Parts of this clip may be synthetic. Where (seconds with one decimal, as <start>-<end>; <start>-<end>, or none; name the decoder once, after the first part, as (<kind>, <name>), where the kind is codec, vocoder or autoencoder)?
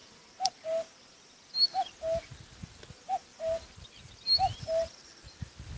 0.0-0.5 (vocoder, BigVGAN v2); 3.3-3.9